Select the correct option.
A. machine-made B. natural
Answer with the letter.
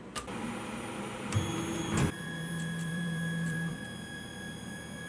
A